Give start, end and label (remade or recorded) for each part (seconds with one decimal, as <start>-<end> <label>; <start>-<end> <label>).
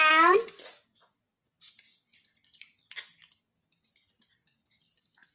0.0-5.3 recorded